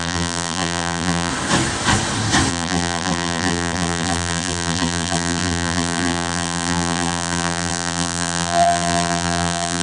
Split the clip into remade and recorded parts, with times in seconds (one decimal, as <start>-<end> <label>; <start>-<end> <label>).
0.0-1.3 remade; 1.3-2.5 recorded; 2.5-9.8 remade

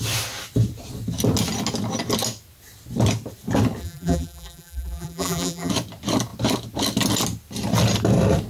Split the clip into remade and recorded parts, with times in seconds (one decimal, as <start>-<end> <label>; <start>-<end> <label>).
0.0-3.8 recorded; 3.8-5.7 remade; 5.7-8.5 recorded

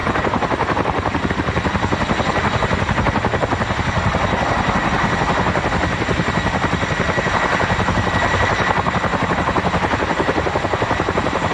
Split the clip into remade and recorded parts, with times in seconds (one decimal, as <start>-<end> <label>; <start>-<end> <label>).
0.0-11.5 recorded

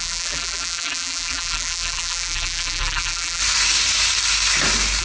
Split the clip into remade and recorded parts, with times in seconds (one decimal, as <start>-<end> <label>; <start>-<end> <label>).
0.0-3.4 remade; 3.4-5.0 recorded

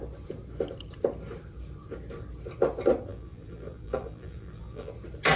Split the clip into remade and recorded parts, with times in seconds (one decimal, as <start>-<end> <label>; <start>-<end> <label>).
0.0-3.1 recorded; 3.1-4.9 remade; 4.9-5.4 recorded

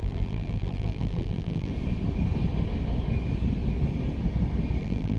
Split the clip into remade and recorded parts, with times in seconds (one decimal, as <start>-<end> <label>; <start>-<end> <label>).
0.0-1.7 remade; 1.7-4.8 recorded; 4.8-5.2 remade